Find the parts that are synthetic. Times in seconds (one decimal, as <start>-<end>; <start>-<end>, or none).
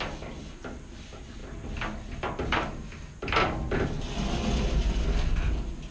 none